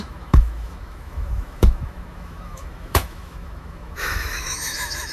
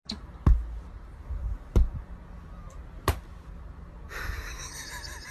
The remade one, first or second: first